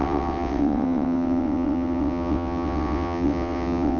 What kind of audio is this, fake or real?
fake